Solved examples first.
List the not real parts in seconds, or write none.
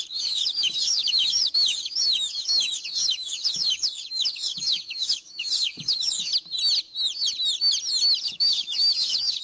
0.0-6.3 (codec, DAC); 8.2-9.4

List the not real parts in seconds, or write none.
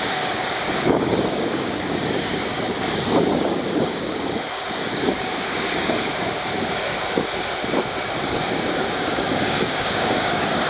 0.0-6.9 (codec, DAC); 8.2-10.7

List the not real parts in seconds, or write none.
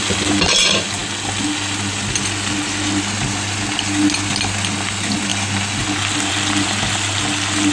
none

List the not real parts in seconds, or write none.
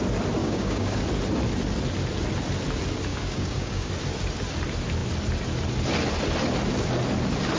0.4-1.0 (codec, DAC); 3.1-3.9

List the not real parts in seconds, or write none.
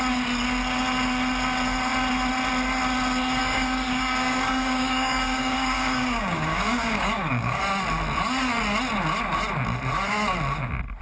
3.4-7.6 (codec, DAC)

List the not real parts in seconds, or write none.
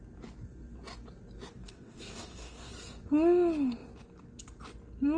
1.5-2.7 (codec, DAC)